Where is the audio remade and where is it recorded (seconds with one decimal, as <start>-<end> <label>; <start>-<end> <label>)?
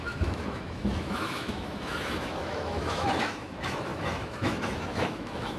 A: 0.0-5.6 remade